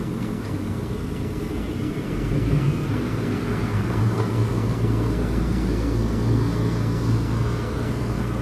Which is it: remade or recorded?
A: remade